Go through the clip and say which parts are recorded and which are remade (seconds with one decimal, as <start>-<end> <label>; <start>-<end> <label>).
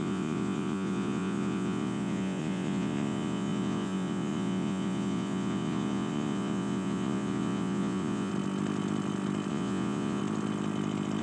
0.0-8.3 remade; 8.3-9.5 recorded; 9.5-10.2 remade; 10.2-11.2 recorded